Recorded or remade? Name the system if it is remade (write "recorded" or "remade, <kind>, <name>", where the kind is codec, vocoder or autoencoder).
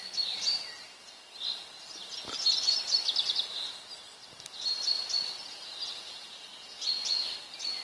recorded